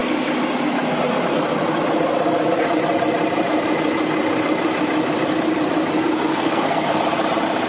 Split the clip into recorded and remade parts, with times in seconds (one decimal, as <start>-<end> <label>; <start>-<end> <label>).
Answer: 0.0-6.3 recorded; 6.3-7.0 remade; 7.0-7.7 recorded